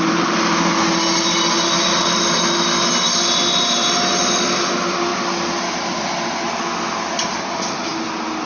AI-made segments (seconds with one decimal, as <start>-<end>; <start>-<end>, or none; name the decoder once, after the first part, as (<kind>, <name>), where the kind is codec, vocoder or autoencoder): none